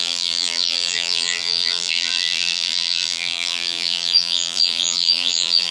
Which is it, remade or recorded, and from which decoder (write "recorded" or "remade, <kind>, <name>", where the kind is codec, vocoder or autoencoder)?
remade, vocoder, BigVGAN v2